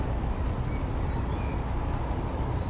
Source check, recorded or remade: recorded